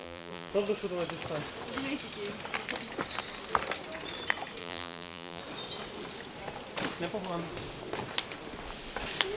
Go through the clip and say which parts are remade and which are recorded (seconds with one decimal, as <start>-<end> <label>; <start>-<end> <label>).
0.0-0.5 remade; 0.5-4.6 recorded; 4.6-5.4 remade; 5.4-9.4 recorded